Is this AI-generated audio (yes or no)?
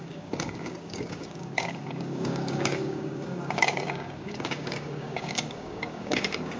yes